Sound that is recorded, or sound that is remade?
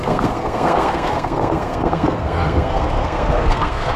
remade